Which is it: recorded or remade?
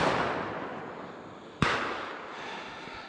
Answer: recorded